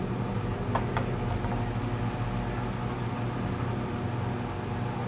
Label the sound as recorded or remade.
recorded